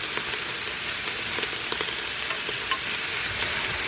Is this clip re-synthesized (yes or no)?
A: no